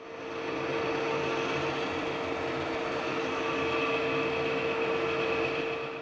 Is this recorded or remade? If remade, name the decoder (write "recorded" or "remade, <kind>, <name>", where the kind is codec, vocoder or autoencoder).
recorded